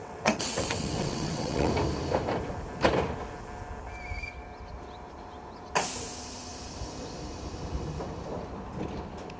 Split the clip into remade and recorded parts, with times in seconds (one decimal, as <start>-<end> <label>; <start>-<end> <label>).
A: 0.0-1.7 remade; 1.7-9.4 recorded